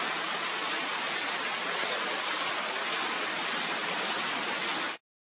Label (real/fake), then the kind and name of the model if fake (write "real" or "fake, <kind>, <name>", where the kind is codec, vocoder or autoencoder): real